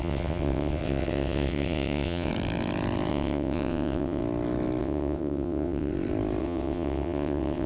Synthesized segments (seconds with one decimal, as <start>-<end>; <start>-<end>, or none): 0.0-2.3; 3.1-4.2; 4.8-5.9; 6.4-7.7